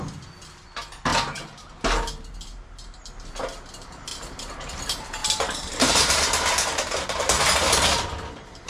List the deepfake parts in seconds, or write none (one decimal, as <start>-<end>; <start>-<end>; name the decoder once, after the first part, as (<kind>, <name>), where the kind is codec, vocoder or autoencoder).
4.1-4.7 (vocoder, BigVGAN v2); 5.2-7.4